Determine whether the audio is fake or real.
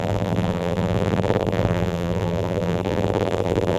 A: fake